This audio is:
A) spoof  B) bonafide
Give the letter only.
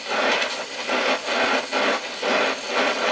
B